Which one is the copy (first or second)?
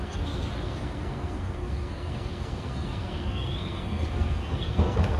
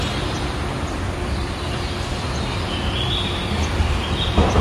first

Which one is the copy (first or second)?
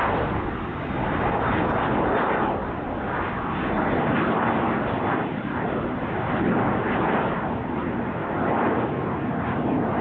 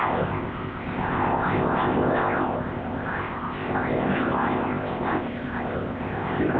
second